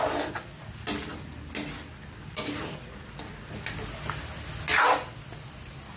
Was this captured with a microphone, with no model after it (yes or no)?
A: yes